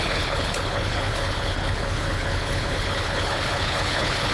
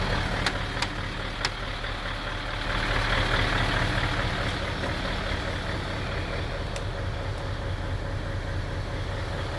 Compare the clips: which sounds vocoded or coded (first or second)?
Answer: first